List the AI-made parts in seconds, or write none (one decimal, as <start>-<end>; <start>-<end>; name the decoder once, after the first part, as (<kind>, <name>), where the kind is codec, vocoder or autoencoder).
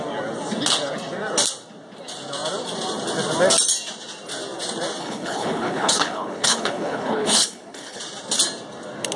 5.0-8.0 (codec, HILCodec)